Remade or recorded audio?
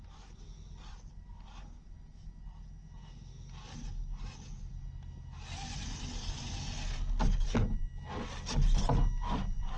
recorded